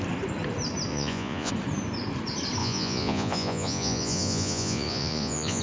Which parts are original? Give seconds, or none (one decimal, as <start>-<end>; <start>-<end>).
0.0-0.9; 1.5-2.6